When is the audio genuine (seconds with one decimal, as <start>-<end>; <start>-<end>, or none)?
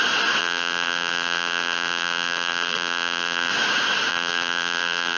0.0-0.4; 3.5-4.1